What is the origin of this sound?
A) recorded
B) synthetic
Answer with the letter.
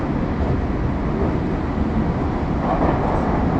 A